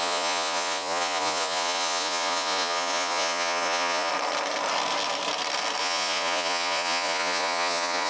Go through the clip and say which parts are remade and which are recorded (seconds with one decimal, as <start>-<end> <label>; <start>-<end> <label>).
0.0-4.1 remade; 4.1-5.8 recorded; 5.8-8.1 remade